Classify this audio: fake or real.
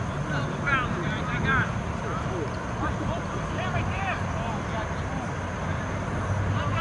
real